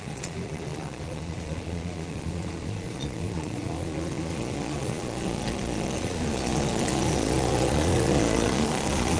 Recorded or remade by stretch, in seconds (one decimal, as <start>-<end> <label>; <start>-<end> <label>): 0.0-9.2 remade